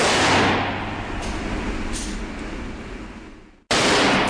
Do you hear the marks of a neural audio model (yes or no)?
no